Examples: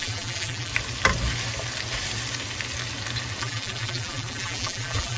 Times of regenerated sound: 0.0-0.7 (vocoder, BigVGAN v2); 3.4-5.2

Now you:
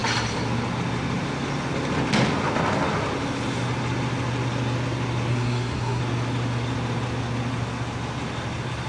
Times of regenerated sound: 5.3-6.0 (codec, SNAC)

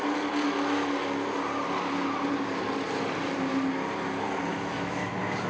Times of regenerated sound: 4.5-5.1 (autoencoder, DAC-VAE)

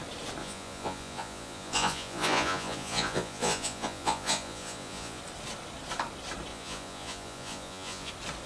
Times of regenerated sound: 0.4-5.2 (vocoder, Vocos); 6.5-8.1

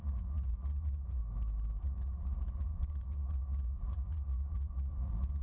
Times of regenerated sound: 0.0-1.2 (vocoder, Vocos); 1.8-5.4

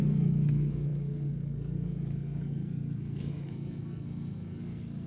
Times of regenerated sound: 0.0-5.1 (codec, SNAC)

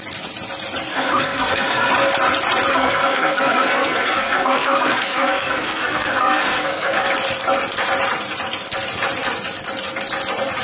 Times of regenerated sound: 0.9-1.9 (codec, SNAC); 2.7-7.1